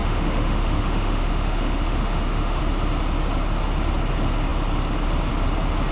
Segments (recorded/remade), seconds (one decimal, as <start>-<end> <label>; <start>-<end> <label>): 0.0-2.6 remade; 2.6-5.9 recorded